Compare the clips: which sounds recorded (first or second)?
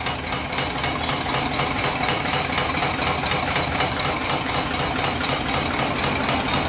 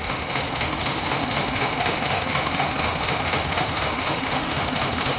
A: first